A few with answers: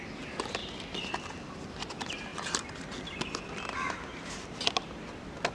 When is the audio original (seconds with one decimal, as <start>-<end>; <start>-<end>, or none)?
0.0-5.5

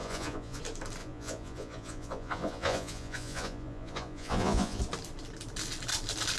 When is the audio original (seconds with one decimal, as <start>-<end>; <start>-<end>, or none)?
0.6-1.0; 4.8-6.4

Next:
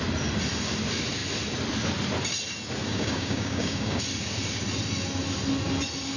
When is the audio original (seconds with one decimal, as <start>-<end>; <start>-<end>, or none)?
0.0-2.8; 4.0-6.2

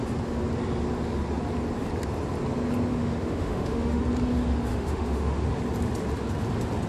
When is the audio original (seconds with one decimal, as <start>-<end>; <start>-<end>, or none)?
0.0-2.9; 4.0-4.7; 5.5-6.9